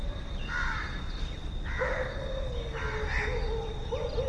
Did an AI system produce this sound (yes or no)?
no